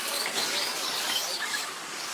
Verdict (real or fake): fake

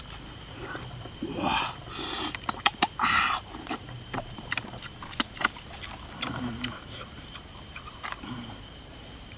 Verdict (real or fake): fake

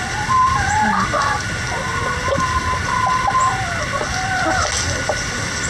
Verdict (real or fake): real